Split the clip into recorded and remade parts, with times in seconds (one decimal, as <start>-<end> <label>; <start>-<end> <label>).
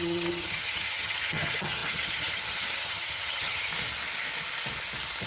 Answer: 0.0-3.7 remade; 3.7-5.3 recorded